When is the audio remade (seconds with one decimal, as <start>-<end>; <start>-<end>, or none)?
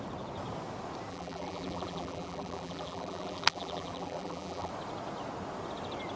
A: 1.1-4.7